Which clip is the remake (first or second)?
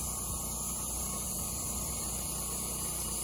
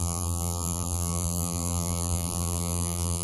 second